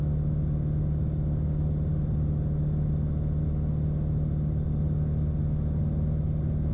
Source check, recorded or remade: recorded